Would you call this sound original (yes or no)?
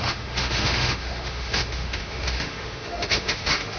no